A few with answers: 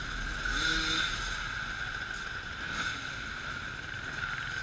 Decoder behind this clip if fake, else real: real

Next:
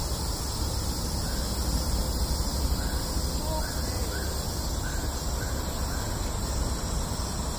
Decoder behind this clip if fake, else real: real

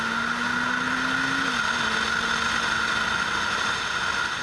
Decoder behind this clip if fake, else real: real